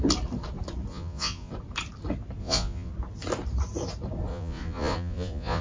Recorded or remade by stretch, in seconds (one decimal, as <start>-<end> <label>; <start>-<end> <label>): 0.0-0.9 recorded; 0.9-1.5 remade; 1.5-2.4 recorded; 2.4-2.9 remade; 2.9-4.3 recorded; 4.3-5.6 remade